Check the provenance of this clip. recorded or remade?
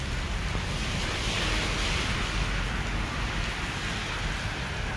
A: recorded